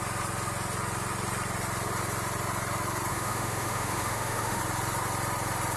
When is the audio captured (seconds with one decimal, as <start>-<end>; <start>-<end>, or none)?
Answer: 0.0-3.1; 4.6-5.8